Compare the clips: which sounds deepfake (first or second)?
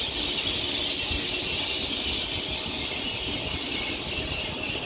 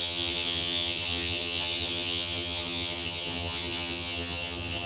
second